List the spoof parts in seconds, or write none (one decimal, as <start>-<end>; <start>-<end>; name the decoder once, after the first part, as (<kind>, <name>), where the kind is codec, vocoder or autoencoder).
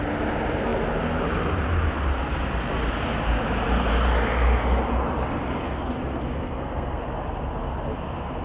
6.4-7.0 (codec, SNAC)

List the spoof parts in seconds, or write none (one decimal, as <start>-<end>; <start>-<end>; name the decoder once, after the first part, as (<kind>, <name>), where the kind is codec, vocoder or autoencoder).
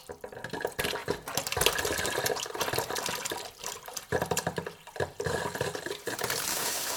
6.5-7.0 (autoencoder, DAC-VAE)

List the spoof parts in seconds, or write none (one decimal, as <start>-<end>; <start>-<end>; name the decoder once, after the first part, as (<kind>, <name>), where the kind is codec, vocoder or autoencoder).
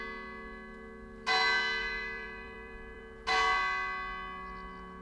1.8-3.0 (vocoder, BigVGAN v2)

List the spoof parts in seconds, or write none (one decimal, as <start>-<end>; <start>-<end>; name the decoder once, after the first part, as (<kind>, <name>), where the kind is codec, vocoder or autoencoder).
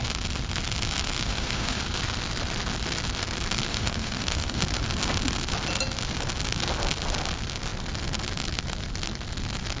1.2-1.8 (autoencoder, DAC-VAE); 3.7-4.6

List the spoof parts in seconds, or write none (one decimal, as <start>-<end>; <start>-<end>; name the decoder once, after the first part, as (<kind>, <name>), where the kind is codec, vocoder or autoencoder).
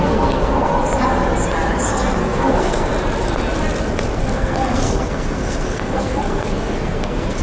0.0-0.7 (codec, SNAC); 2.2-2.9; 4.1-7.4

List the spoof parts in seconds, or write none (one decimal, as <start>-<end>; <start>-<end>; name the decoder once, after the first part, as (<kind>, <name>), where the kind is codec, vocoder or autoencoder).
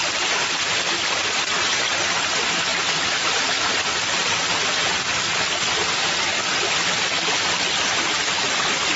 0.0-9.0 (vocoder, BigVGAN v2)